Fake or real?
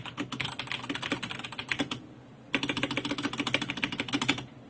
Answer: real